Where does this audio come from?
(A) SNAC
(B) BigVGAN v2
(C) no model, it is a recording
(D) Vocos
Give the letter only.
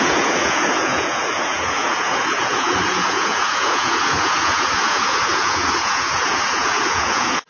D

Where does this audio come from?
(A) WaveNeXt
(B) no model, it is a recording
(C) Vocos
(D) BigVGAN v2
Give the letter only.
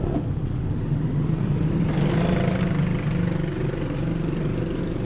B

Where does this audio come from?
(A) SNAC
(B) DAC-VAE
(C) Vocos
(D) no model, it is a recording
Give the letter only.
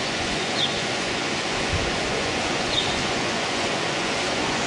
C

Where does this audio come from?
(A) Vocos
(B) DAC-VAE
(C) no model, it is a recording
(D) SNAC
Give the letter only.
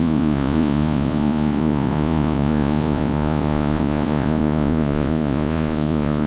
A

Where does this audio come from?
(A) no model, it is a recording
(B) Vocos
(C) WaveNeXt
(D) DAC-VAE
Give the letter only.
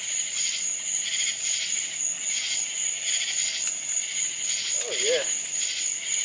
A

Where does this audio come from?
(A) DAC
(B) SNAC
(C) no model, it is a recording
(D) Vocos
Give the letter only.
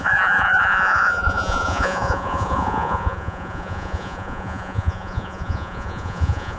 D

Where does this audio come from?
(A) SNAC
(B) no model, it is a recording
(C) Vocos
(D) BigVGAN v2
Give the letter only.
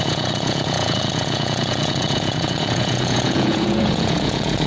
C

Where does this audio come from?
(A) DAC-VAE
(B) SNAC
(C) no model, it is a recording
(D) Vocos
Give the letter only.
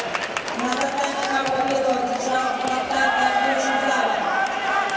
C